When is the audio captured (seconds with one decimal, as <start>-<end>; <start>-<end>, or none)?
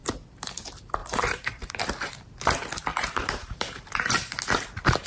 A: 0.0-1.0; 1.7-2.9; 3.9-5.1